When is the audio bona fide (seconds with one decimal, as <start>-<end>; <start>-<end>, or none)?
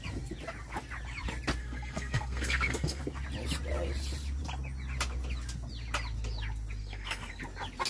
0.0-1.6; 3.0-6.8; 7.4-7.9